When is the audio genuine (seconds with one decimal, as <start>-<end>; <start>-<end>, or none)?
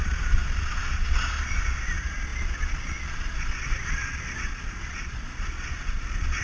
none